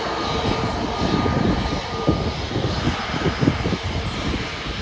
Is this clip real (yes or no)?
yes